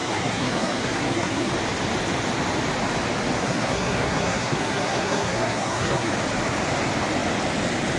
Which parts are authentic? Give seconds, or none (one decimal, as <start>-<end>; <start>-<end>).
1.5-3.4; 6.1-8.0